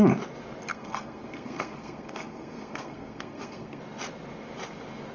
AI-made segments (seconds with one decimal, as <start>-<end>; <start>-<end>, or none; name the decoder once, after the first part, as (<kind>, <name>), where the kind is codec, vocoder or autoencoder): 0.7-3.8 (codec, SNAC)